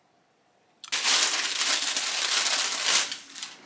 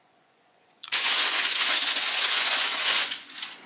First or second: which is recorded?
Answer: first